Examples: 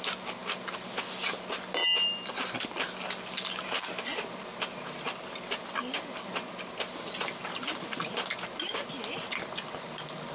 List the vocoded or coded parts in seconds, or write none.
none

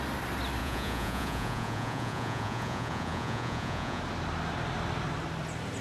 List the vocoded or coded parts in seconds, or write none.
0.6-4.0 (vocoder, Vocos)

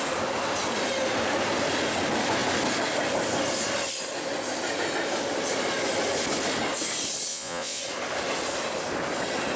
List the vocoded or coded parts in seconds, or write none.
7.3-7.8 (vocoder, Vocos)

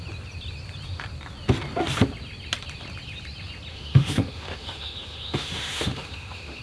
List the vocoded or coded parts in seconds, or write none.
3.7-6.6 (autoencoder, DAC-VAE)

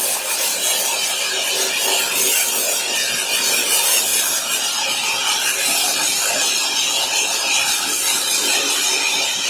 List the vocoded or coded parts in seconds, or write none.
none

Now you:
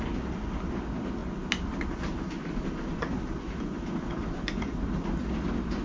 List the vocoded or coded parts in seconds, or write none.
none

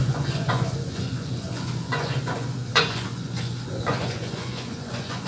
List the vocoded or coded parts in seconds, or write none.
0.0-5.3 (vocoder, Vocos)

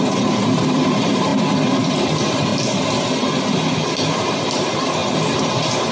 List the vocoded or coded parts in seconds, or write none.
0.0-2.5 (vocoder, BigVGAN v2); 4.0-5.0